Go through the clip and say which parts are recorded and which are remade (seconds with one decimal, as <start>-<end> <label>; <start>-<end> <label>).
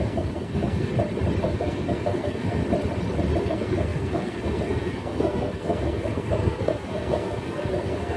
0.0-0.9 remade; 0.9-1.4 recorded; 1.4-2.6 remade; 2.6-3.4 recorded; 3.4-8.2 remade